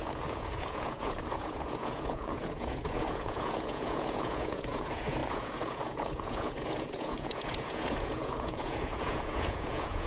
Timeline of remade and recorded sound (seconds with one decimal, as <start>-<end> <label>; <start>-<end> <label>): 0.0-10.1 remade